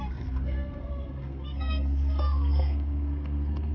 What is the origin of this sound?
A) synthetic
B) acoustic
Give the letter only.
A